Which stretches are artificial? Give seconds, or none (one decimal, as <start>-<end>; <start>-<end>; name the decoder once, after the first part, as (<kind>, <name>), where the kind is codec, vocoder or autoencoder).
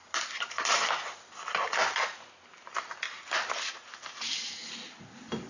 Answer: none